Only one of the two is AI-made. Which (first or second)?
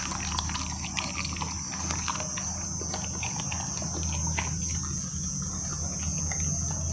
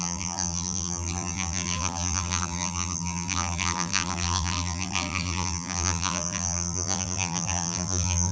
second